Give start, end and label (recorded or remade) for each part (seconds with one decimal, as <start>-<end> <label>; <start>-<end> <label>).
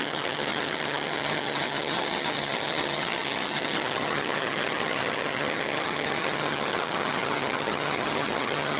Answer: 0.0-8.8 remade